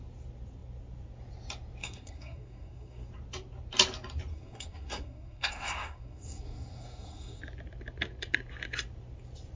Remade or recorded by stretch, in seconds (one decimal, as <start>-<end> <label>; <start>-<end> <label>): 0.0-1.8 recorded; 1.8-3.1 remade; 3.1-4.3 recorded; 4.3-7.4 remade; 7.4-9.6 recorded

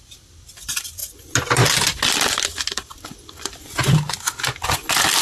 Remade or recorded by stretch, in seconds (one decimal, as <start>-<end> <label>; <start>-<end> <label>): 0.0-5.2 recorded

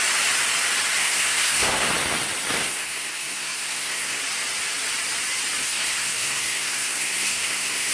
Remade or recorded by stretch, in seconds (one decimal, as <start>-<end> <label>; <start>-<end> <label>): 0.0-1.0 recorded; 1.0-1.9 remade; 1.9-2.6 recorded; 2.6-4.2 remade; 4.2-5.6 recorded; 5.6-7.9 remade

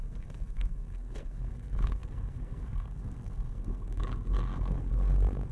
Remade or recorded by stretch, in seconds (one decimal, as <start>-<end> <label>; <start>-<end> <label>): 0.0-5.5 remade